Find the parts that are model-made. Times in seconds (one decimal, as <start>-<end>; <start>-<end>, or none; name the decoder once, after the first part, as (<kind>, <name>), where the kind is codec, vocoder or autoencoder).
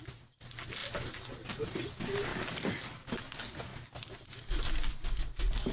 2.3-3.2 (vocoder, BigVGAN v2)